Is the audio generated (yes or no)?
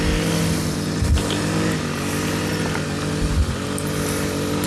no